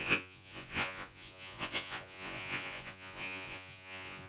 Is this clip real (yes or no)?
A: no